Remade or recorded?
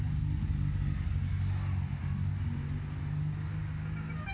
recorded